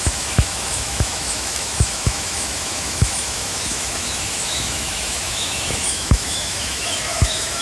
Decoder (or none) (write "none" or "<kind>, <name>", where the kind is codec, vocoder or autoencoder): autoencoder, DAC-VAE